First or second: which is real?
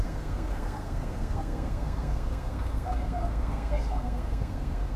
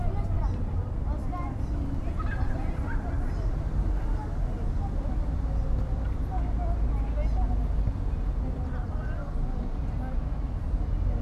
second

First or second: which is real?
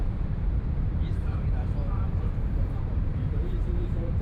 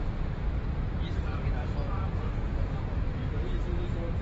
second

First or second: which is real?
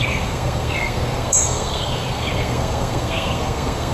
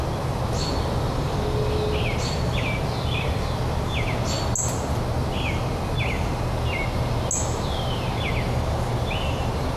second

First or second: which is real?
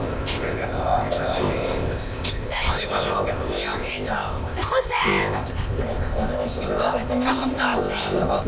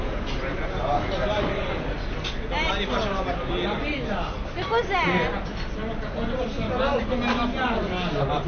second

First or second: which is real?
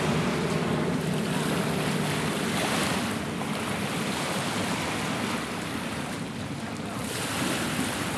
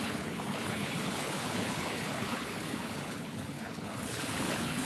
first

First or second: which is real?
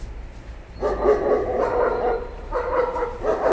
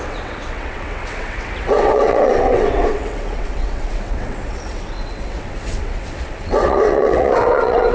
first